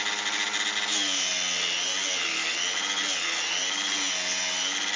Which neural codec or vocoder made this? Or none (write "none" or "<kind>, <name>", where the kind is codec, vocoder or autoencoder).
none